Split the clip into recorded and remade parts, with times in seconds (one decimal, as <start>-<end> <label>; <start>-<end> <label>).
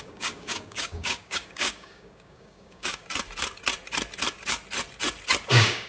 0.0-3.0 remade; 3.0-5.5 recorded; 5.5-5.9 remade